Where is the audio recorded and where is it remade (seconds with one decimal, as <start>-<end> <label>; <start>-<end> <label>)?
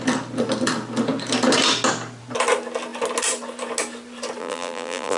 0.0-4.4 recorded; 4.4-5.2 remade